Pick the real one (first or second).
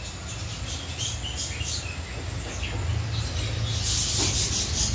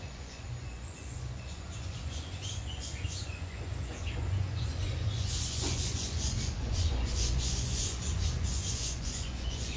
first